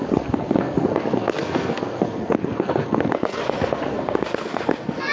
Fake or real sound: fake